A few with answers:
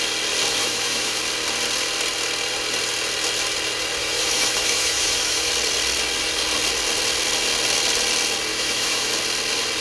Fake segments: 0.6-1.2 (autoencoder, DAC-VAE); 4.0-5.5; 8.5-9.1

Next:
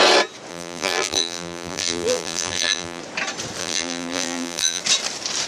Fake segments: 0.5-3.0 (vocoder, BigVGAN v2); 3.6-4.8

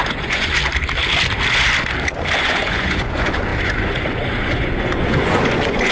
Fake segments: 0.0-0.6 (vocoder, Vocos); 2.4-5.9

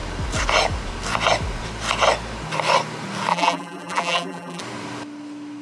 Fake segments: 3.3-4.6 (vocoder, BigVGAN v2)

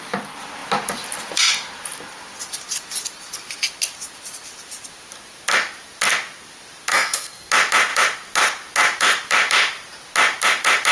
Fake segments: 6.9-7.5 (codec, SNAC)

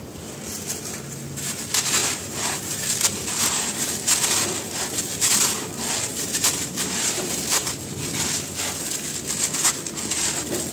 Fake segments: 2.0-3.8 (vocoder, BigVGAN v2); 6.1-7.7